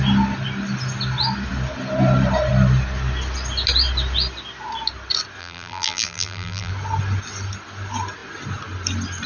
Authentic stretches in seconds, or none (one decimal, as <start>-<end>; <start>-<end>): 0.0-5.4; 6.7-9.3